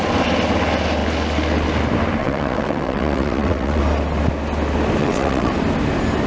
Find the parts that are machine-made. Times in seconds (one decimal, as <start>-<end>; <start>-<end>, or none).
2.2-3.8; 5.0-5.5